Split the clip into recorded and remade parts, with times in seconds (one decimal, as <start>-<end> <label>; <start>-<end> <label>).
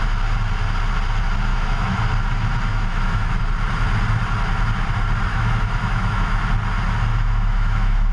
0.0-1.5 recorded; 1.5-2.0 remade; 2.0-2.7 recorded; 2.7-3.4 remade; 3.4-5.3 recorded; 5.3-6.4 remade; 6.4-7.1 recorded; 7.1-8.1 remade